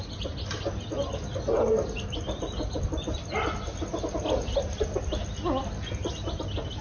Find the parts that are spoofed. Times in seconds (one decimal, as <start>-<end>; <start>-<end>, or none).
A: none